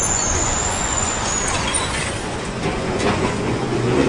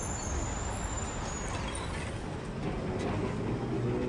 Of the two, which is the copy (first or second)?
first